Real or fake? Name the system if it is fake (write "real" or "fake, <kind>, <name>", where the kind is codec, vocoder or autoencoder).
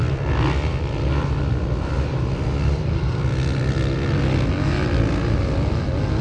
real